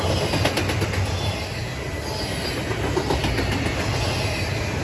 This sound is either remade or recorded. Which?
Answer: recorded